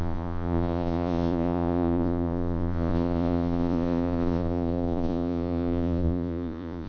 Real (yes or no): no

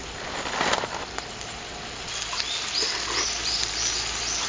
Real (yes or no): yes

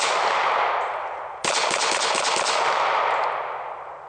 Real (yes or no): yes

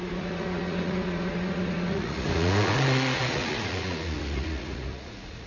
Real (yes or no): no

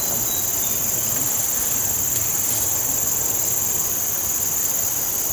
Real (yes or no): yes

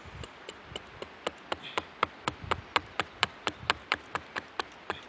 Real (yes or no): yes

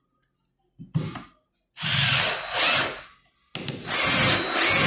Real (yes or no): yes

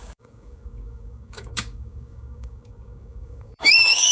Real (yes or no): no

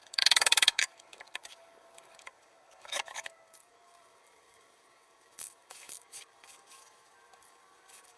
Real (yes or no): no